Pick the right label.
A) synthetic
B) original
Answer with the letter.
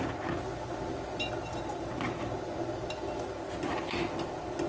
B